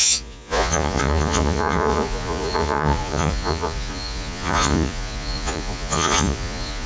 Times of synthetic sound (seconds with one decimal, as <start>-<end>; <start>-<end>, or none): 0.0-6.9